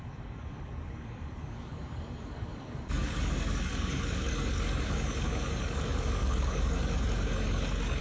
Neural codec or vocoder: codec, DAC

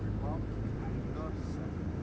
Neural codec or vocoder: none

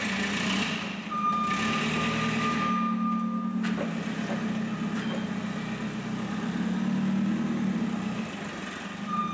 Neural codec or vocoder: none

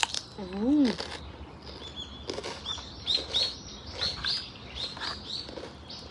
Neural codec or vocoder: none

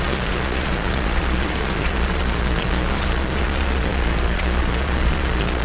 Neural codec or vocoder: vocoder, Vocos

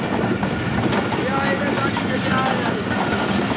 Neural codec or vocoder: none